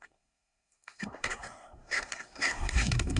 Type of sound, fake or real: fake